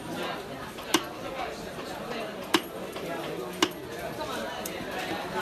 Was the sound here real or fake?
real